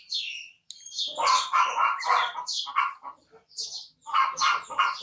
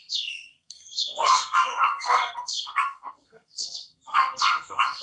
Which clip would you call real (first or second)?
first